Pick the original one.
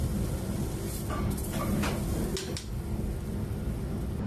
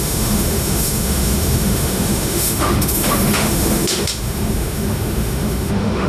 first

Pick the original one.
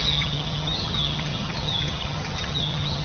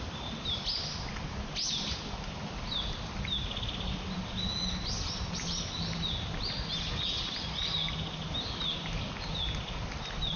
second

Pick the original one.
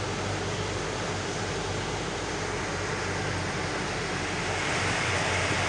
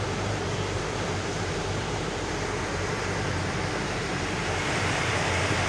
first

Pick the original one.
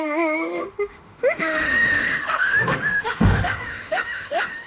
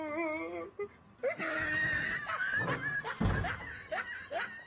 second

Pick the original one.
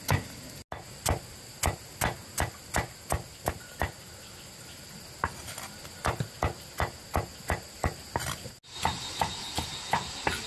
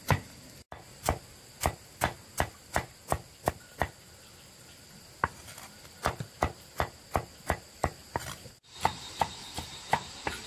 first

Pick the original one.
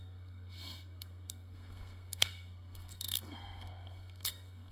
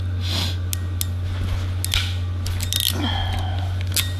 second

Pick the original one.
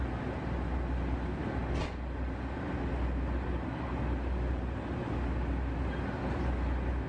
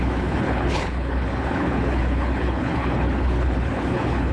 first